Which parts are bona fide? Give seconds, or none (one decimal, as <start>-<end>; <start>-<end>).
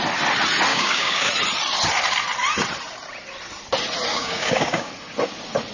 0.0-0.7; 1.3-4.1; 4.9-5.7